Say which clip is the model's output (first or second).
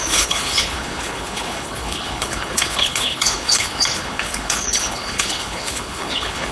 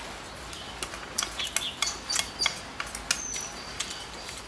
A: first